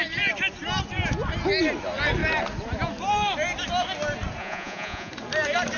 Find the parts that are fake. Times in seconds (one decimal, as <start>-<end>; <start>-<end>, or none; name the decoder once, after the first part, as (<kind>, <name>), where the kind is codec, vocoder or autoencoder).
4.4-5.1 (vocoder, Vocos)

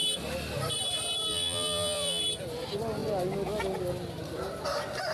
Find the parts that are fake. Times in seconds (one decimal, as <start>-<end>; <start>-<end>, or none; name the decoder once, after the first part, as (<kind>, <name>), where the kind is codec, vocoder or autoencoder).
1.3-2.2 (vocoder, BigVGAN v2)

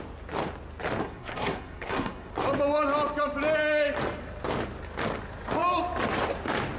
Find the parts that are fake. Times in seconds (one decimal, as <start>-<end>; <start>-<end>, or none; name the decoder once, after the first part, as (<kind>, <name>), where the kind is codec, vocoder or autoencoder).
1.0-2.3 (codec, SNAC)

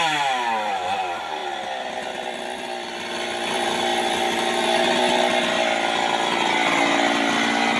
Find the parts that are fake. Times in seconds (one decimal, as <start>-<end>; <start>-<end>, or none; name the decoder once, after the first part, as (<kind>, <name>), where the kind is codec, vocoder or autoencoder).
0.0-1.4 (vocoder, BigVGAN v2); 2.2-3.9

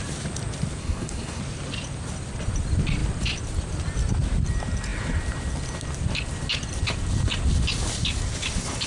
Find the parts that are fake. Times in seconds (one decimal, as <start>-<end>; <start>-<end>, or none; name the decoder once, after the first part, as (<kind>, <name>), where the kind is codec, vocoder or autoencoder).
0.8-1.4 (codec, SNAC)